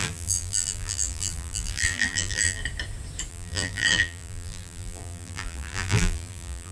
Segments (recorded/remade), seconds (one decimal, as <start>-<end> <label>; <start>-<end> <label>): 0.0-2.6 remade; 2.6-3.3 recorded; 3.3-6.7 remade